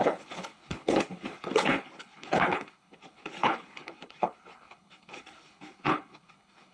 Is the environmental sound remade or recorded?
remade